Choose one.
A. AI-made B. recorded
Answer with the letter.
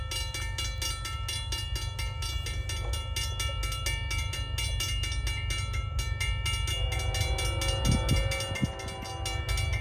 B